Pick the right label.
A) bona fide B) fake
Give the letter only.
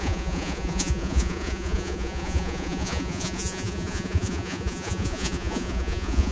B